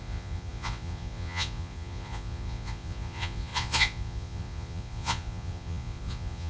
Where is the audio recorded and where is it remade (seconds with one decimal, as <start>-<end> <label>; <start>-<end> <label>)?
0.0-6.5 remade